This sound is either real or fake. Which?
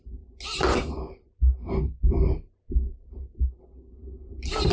real